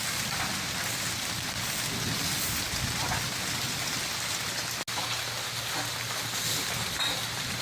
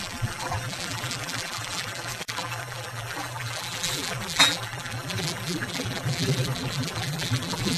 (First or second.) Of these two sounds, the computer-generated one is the second